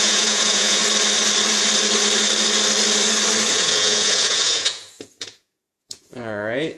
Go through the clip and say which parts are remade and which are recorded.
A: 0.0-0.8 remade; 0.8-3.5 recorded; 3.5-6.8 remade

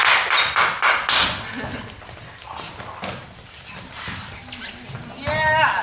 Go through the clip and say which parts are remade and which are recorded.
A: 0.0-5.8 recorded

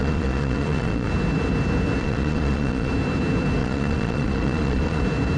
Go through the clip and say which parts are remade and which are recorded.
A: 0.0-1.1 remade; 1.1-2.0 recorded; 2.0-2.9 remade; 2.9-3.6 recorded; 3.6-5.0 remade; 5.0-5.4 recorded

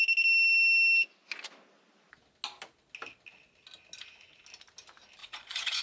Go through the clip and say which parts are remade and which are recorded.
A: 0.0-5.2 recorded; 5.2-5.8 remade

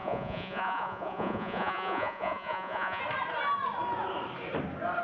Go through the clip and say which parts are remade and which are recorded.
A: 0.0-3.0 remade; 3.0-5.0 recorded

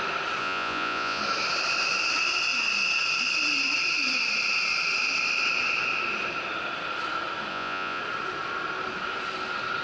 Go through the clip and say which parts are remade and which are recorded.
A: 0.0-0.4 recorded; 0.4-1.2 remade; 1.2-7.5 recorded; 7.5-8.0 remade; 8.0-9.8 recorded

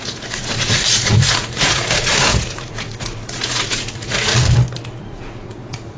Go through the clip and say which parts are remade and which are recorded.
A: 0.0-4.3 remade; 4.3-5.0 recorded; 5.0-6.0 remade

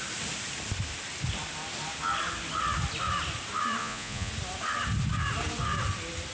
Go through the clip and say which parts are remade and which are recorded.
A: 0.0-3.8 recorded; 3.8-4.3 remade; 4.3-6.3 recorded